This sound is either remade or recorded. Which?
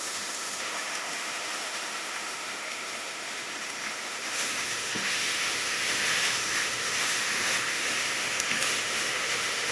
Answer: remade